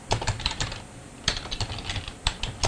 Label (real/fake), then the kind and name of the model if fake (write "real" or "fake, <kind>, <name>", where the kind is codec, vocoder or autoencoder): fake, vocoder, BigVGAN v2